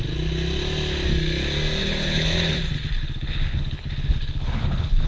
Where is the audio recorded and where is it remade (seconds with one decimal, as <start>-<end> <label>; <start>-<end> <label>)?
0.0-1.8 recorded; 1.8-5.1 remade